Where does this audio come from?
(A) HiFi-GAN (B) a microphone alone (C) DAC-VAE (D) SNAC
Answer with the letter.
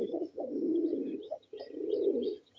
A